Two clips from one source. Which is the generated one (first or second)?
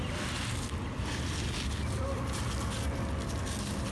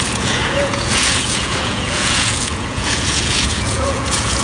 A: second